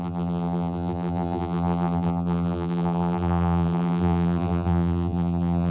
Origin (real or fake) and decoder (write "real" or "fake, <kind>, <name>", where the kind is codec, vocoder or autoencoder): fake, vocoder, BigVGAN v2